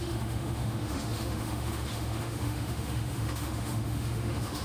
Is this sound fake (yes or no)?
yes